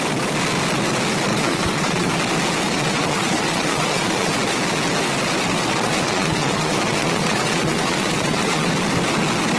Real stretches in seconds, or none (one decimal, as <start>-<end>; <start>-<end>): 0.0-1.3; 2.1-2.7; 4.3-5.7; 8.7-9.6